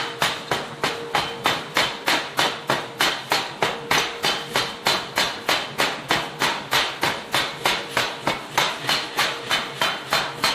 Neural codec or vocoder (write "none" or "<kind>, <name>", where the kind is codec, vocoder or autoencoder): none